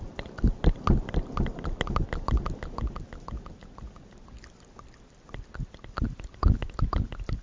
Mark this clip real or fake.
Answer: real